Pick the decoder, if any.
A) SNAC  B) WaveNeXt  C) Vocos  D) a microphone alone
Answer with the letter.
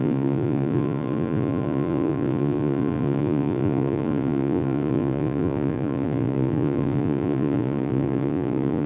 C